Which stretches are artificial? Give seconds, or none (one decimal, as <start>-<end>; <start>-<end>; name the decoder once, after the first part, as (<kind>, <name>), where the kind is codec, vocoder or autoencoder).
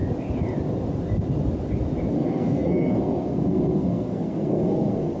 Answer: 2.1-5.2 (codec, SNAC)